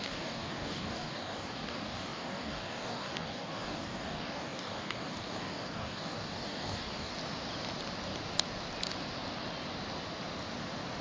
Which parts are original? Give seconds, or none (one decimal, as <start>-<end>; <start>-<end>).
7.1-11.0